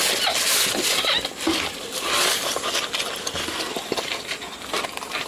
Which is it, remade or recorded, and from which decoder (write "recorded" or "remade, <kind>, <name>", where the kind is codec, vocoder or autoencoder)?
recorded